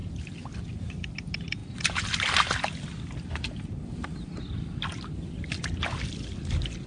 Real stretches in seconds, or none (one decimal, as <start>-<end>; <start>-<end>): 0.0-6.9